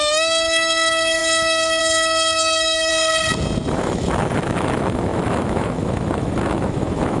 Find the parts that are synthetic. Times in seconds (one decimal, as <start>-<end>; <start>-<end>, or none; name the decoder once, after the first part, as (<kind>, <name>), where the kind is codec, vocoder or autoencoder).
0.0-2.9 (autoencoder, DAC-VAE); 3.7-7.2